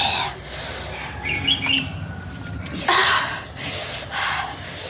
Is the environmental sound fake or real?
real